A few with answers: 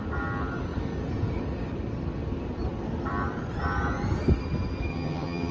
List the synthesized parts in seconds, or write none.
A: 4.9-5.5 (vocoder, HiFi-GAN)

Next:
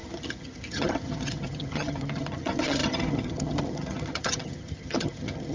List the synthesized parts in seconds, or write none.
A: 0.0-5.5 (vocoder, HiFi-GAN)

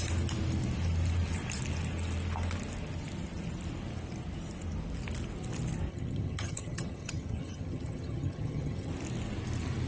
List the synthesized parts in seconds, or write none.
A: 5.9-8.9 (vocoder, HiFi-GAN)